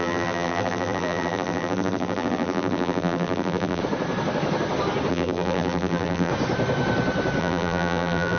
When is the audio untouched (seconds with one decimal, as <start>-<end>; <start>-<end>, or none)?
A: 3.8-5.1; 6.3-7.4

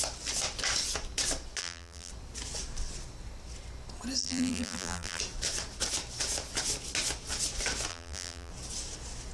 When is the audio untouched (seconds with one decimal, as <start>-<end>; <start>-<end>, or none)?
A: 0.0-1.6; 2.1-4.2; 5.2-7.9; 8.5-9.3

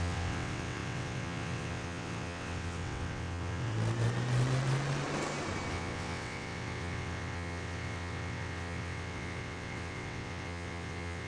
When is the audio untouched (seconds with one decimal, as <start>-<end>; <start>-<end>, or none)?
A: 3.7-5.7

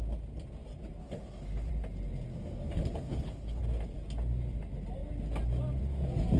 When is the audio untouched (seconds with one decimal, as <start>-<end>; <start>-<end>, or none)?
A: 0.0-1.0; 1.7-2.3; 3.6-6.4

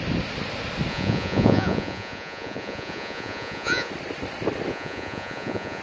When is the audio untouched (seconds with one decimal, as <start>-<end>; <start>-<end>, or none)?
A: 0.0-0.9; 3.9-4.7

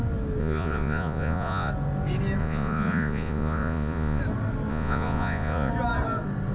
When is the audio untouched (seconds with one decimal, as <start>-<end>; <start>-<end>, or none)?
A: 0.0-0.4; 1.7-2.4; 4.2-4.7; 5.7-6.5

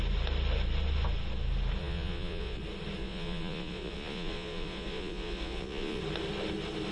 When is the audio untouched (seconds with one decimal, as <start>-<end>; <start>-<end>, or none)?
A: 0.0-1.8; 2.6-3.0; 6.0-6.9

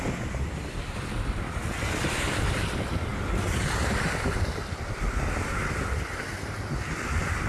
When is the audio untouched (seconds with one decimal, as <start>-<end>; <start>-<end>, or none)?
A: 0.0-7.5